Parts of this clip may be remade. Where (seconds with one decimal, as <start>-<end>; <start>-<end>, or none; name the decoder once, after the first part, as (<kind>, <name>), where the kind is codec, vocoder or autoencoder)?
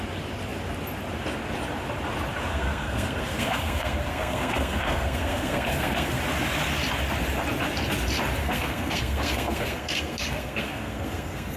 2.5-6.2 (codec, SNAC); 8.4-11.6